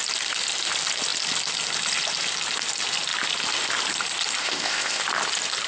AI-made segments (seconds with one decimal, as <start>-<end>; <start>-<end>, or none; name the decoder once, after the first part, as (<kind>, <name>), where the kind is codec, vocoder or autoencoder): 4.4-5.0 (codec, ZipCodec)